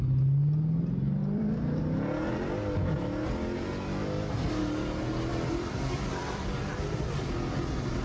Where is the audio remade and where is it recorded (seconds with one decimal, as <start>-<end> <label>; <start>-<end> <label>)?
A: 0.0-1.2 recorded; 1.2-1.8 remade; 1.8-4.0 recorded; 4.0-4.6 remade; 4.6-5.3 recorded; 5.3-8.0 remade